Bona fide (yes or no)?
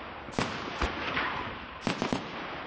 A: yes